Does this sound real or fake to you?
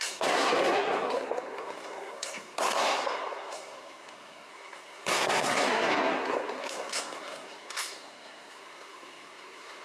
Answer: fake